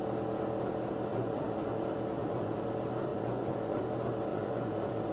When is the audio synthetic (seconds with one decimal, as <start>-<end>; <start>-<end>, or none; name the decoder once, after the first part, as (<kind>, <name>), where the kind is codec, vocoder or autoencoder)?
1.1-1.8 (vocoder, Vocos); 2.2-2.7; 3.1-3.8; 4.3-5.1